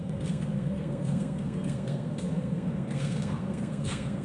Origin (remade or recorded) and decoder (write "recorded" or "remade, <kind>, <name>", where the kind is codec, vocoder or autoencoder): remade, codec, SNAC